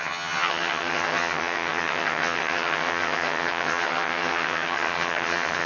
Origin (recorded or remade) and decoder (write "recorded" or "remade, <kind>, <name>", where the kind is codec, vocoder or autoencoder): remade, vocoder, HiFi-GAN